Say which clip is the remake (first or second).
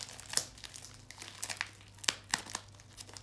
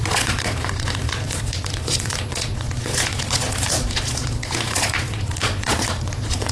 second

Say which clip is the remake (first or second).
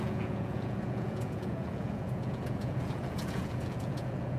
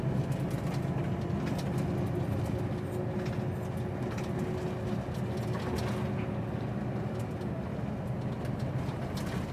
first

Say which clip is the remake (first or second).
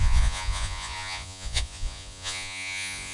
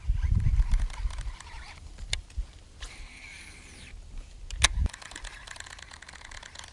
first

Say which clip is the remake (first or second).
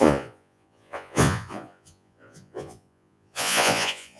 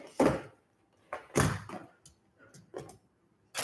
first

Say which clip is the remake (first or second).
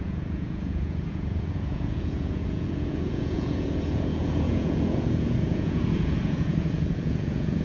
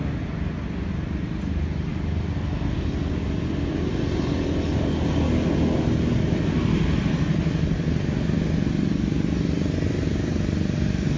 first